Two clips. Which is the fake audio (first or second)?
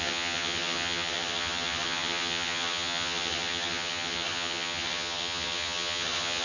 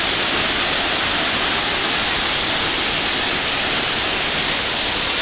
first